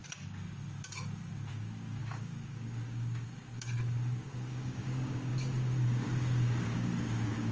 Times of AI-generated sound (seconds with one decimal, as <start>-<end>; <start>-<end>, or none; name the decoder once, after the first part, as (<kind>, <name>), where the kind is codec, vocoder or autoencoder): 1.5-7.5 (codec, DAC)